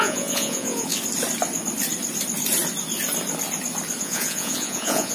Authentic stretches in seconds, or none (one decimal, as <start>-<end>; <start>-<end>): 0.9-4.0

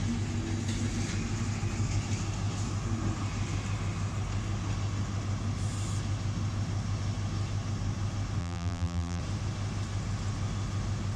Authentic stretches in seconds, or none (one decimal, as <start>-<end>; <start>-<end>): 0.0-8.4; 9.2-11.2

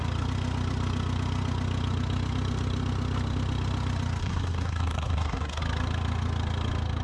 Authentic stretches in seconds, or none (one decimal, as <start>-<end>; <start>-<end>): 0.0-4.2; 5.6-7.0

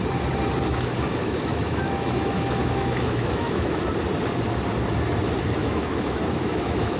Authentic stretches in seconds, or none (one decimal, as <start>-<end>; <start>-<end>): 0.0-1.2; 3.9-5.6

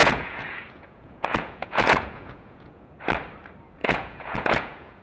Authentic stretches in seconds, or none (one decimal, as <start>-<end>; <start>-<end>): 3.0-3.8